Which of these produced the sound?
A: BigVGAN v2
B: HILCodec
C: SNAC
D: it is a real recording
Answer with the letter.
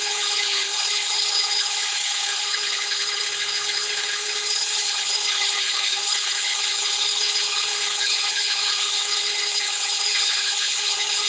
B